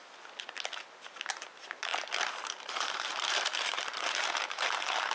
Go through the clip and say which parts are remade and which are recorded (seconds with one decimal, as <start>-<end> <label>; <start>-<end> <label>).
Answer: 0.0-1.3 recorded; 1.3-5.1 remade